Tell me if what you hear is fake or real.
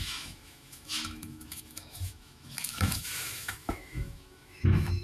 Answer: fake